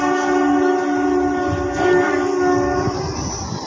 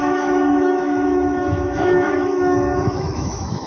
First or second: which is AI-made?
second